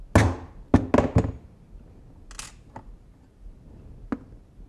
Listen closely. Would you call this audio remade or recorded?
recorded